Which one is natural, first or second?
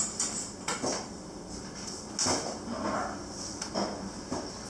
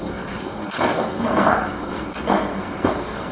first